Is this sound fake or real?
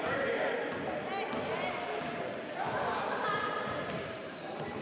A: real